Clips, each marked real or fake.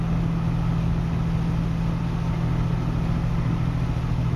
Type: real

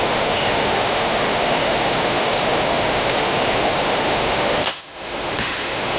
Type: fake